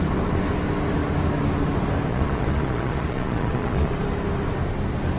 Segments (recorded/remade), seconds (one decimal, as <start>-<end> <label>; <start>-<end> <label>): 0.0-2.1 recorded; 2.1-3.9 remade; 3.9-5.2 recorded